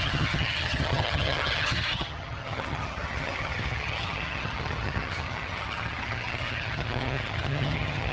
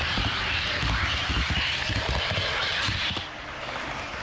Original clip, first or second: second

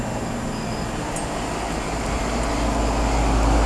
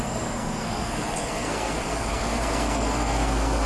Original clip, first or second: first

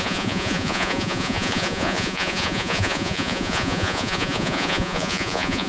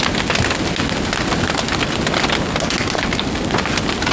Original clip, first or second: second